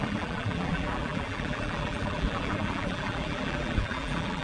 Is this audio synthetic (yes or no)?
yes